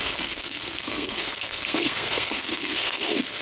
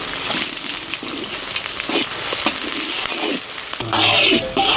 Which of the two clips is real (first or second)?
second